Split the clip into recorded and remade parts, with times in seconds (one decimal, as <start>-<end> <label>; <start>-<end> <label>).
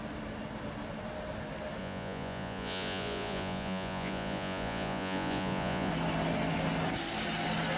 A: 0.0-1.8 recorded; 1.8-5.9 remade; 5.9-7.8 recorded